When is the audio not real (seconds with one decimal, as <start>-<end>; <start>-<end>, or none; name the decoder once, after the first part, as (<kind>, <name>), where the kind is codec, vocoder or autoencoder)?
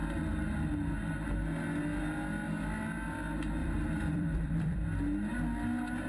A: 3.6-4.8 (vocoder, BigVGAN v2)